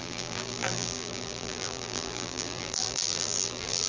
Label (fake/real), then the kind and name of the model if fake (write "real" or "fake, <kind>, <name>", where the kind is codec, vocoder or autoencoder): fake, vocoder, BigVGAN v2